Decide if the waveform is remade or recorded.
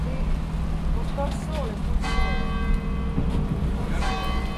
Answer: recorded